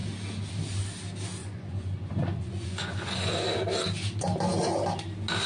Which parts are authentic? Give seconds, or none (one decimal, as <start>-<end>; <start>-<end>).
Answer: 0.0-1.4; 3.3-5.5